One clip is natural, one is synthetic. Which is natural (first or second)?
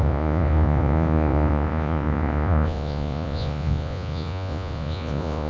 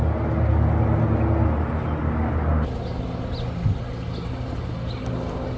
second